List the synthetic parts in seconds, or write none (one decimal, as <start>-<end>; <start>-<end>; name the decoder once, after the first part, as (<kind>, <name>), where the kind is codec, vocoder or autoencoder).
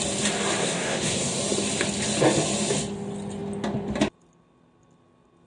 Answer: 0.6-1.4 (codec, SNAC)